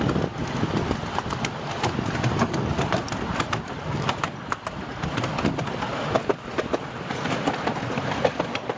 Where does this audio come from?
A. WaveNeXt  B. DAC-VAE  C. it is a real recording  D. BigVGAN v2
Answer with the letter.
C